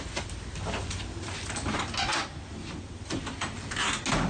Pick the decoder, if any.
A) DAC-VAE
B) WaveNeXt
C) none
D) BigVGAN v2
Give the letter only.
C